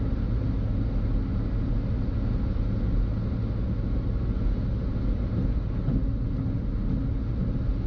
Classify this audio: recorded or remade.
recorded